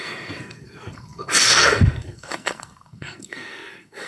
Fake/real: fake